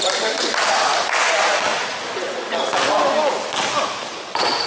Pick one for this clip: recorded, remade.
recorded